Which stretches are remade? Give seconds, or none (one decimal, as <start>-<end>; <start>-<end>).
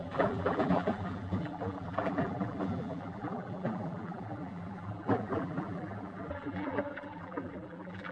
0.0-8.1